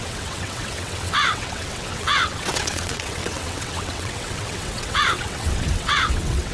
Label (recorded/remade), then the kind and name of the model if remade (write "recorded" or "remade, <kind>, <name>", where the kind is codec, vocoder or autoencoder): remade, vocoder, WaveNeXt